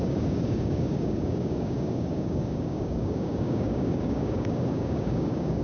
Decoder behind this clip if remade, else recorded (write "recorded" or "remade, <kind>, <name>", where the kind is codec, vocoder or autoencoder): remade, codec, DAC